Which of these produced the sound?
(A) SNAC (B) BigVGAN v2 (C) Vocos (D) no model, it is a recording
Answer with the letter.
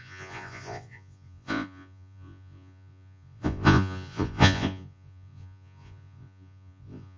C